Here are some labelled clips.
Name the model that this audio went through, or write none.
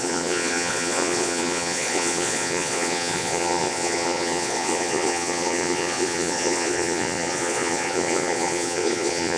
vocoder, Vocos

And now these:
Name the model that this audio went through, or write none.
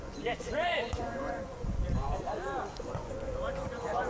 vocoder, Vocos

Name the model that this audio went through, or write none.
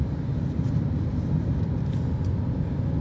none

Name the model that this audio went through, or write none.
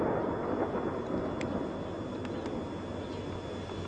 none